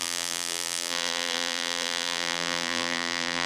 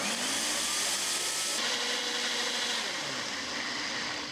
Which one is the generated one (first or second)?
first